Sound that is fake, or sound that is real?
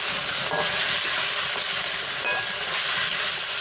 real